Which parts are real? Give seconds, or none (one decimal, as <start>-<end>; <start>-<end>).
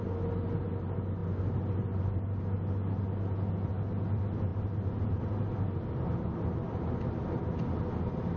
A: 0.0-8.4